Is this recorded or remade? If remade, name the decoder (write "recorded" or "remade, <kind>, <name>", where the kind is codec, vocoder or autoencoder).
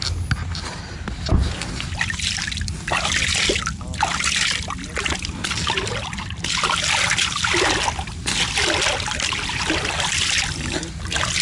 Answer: recorded